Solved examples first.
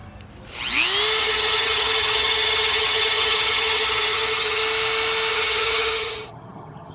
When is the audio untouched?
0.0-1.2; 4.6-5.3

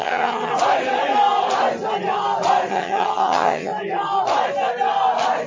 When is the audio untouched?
0.5-2.7; 3.7-5.5